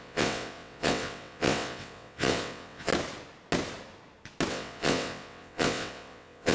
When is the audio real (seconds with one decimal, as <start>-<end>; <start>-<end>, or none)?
2.9-4.5